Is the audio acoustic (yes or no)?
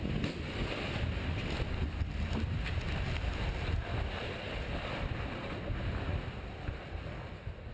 yes